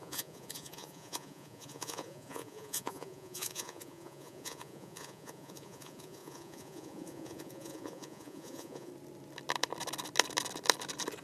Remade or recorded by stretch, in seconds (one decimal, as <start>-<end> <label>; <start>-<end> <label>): 0.0-8.9 remade; 8.9-11.2 recorded